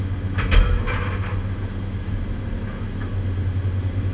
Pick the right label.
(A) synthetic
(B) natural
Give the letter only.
B